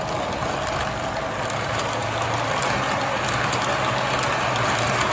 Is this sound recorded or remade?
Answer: recorded